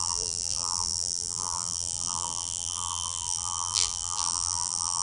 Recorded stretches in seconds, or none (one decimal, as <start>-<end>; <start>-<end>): none

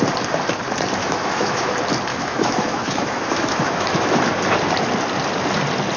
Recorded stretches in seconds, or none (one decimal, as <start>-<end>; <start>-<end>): 0.0-1.0; 1.7-2.1; 4.2-6.0